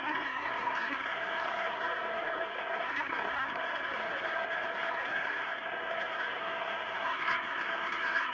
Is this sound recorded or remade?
remade